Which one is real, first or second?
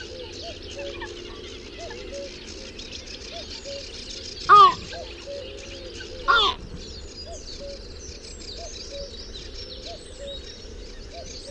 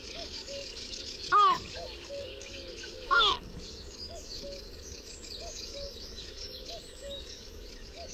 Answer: first